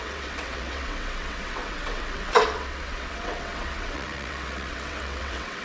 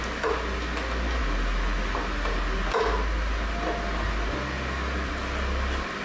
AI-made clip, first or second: first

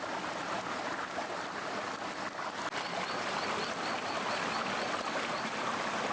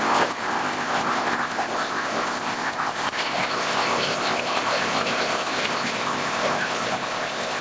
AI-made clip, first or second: second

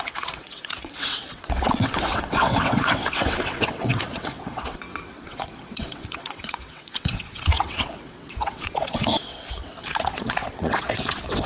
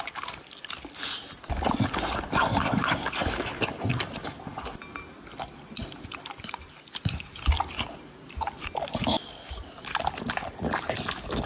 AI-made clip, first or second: first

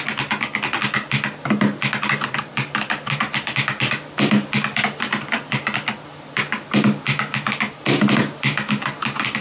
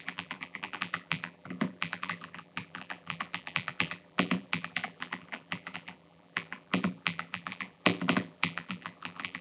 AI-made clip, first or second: second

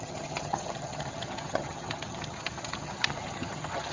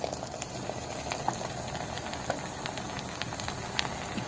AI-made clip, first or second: first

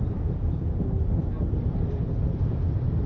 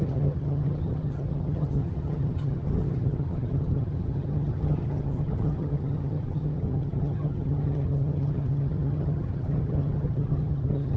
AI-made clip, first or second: second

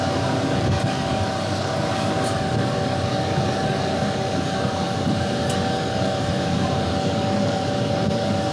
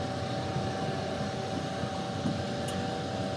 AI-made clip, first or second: first